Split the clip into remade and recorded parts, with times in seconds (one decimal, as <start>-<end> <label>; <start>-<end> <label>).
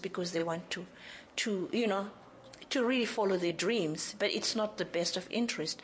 0.0-0.4 recorded; 0.4-3.5 remade; 3.5-5.3 recorded; 5.3-5.8 remade